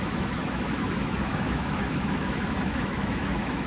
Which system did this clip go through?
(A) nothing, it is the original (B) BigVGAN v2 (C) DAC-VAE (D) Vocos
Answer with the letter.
C